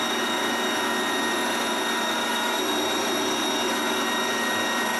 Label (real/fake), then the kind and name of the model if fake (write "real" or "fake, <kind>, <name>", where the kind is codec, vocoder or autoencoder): real